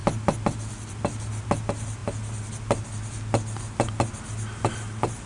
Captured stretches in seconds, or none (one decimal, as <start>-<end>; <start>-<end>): 0.0-5.3